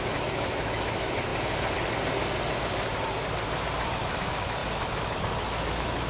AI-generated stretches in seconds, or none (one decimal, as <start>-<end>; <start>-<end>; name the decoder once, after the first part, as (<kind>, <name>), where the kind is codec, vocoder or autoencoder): 0.0-1.3 (autoencoder, DAC-VAE); 4.1-6.1